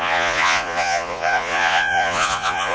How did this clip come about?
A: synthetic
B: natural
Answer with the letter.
A